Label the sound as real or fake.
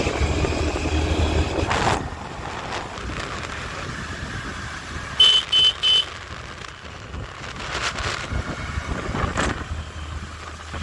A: real